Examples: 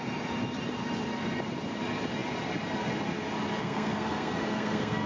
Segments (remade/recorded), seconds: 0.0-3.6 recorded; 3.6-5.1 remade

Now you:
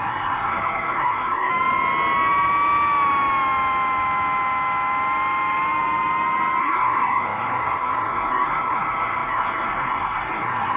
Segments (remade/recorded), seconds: 0.0-1.5 remade; 1.5-6.6 recorded; 6.6-10.8 remade

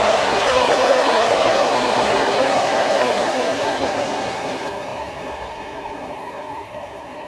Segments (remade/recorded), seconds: 0.0-7.3 remade

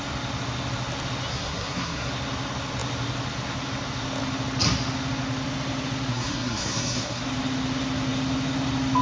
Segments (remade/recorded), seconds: 0.0-1.3 recorded; 1.3-2.1 remade; 2.1-6.1 recorded; 6.1-7.2 remade; 7.2-9.0 recorded

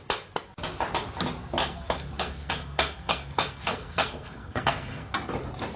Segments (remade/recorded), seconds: 0.0-1.6 recorded; 1.6-5.1 remade; 5.1-5.8 recorded